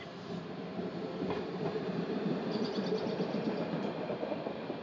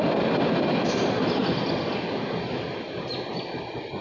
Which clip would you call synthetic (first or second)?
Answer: first